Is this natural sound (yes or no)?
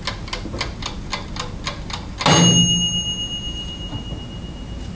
yes